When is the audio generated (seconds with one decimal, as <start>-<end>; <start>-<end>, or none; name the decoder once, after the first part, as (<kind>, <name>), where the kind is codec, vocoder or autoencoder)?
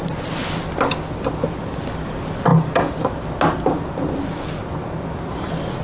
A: none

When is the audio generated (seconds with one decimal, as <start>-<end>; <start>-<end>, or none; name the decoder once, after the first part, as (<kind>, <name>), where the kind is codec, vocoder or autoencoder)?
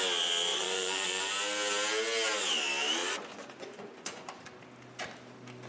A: 0.5-1.2 (vocoder, Vocos); 3.0-4.4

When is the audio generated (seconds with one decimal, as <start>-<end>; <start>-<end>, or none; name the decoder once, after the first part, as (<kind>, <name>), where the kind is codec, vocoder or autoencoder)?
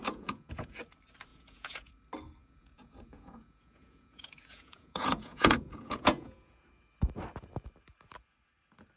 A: 0.0-0.8 (vocoder, Vocos); 1.3-1.9; 2.4-6.6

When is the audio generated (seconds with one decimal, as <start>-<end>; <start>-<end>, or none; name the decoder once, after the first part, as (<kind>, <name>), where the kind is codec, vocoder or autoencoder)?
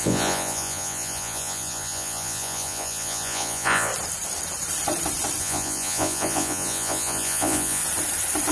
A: 0.0-3.9 (vocoder, Vocos); 5.4-7.8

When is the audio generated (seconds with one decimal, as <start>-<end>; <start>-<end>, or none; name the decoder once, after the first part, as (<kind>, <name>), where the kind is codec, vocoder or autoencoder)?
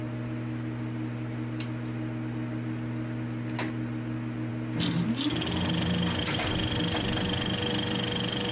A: none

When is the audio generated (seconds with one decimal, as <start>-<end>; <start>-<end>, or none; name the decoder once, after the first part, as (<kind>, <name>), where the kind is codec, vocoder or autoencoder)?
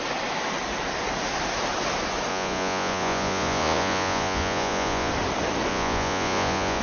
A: 2.3-5.1 (vocoder, Vocos); 5.7-6.8